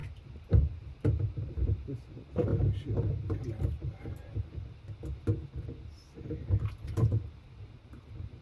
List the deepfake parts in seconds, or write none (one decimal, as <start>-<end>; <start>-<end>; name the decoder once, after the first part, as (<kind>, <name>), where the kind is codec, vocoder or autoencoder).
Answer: 0.6-4.3 (vocoder, BigVGAN v2); 5.8-8.4